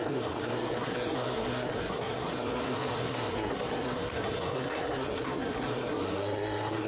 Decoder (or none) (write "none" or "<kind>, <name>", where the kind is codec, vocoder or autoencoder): codec, SNAC